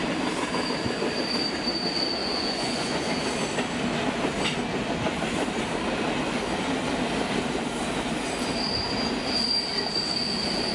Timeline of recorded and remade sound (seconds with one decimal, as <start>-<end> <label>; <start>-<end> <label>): 0.0-2.2 recorded; 2.2-3.1 remade; 3.1-10.7 recorded